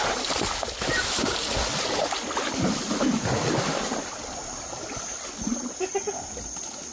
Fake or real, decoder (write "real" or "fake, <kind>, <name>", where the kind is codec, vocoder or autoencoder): real